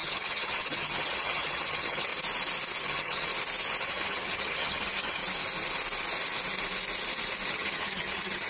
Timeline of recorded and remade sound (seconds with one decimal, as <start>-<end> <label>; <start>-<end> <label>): 0.0-2.1 remade; 2.1-2.8 recorded; 2.8-3.3 remade; 3.3-3.8 recorded; 3.8-5.2 remade; 5.2-7.5 recorded; 7.5-8.5 remade